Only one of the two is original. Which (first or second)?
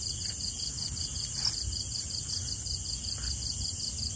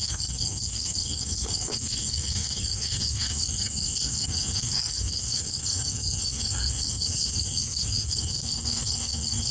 first